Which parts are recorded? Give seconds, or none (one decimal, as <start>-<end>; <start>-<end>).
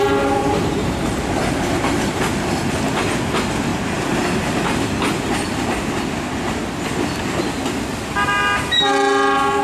0.0-0.4; 2.3-3.7; 4.6-9.6